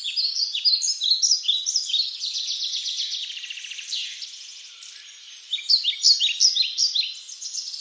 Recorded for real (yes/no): yes